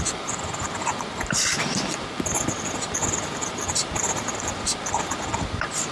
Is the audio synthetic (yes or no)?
no